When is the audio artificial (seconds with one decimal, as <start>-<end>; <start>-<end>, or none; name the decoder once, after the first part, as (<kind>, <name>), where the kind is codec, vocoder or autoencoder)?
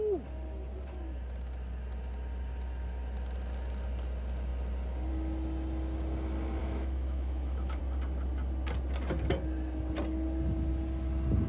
6.6-7.8 (autoencoder, DAC-VAE)